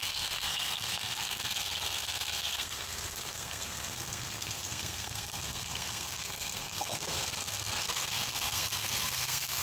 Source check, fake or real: fake